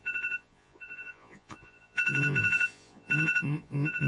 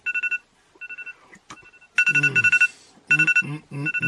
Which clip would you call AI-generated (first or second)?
first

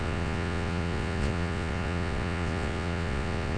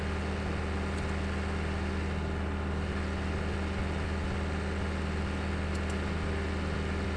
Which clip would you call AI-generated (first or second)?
first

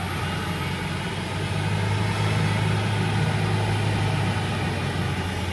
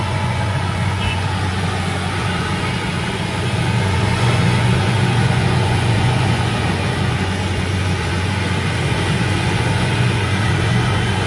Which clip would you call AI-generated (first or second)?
second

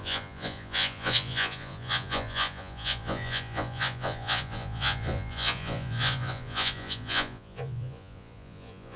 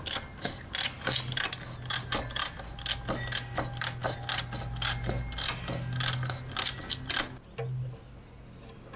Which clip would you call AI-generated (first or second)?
first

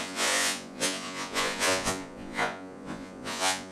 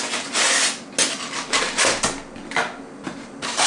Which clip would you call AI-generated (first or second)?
first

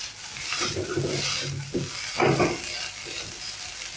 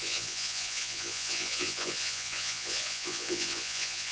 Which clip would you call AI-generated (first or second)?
second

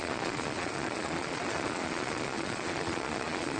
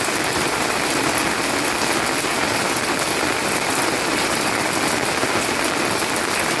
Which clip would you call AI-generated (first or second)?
first